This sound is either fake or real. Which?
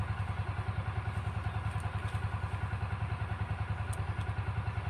real